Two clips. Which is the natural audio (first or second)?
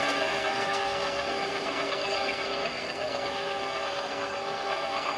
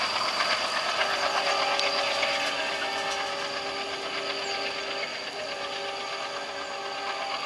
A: second